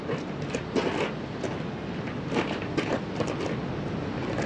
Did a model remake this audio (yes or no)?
no